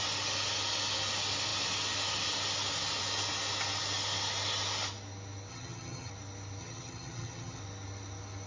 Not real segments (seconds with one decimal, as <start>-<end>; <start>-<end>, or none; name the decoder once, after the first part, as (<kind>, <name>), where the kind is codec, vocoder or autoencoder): 5.5-6.1 (vocoder, HiFi-GAN); 6.6-7.6